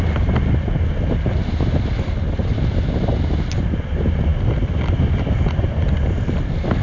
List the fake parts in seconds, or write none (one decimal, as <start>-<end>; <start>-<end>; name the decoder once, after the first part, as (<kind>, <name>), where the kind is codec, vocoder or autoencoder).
none